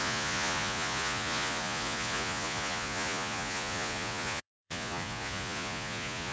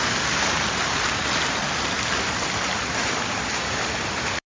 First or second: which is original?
second